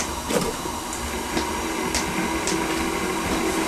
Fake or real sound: real